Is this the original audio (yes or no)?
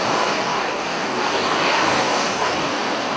no